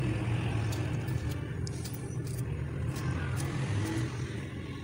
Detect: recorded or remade recorded